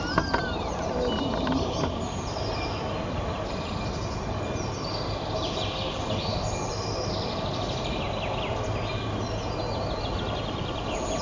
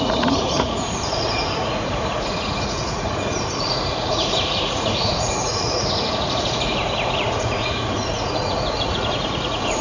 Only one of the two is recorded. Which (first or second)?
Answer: first